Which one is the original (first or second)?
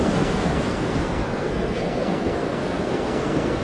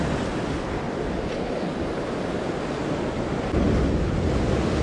second